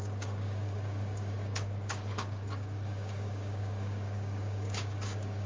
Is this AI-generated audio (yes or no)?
yes